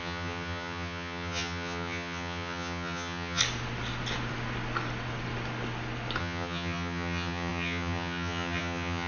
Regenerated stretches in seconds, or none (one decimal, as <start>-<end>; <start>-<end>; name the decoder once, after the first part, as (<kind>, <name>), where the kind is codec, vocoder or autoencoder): 0.0-3.4 (vocoder, HiFi-GAN); 6.2-9.1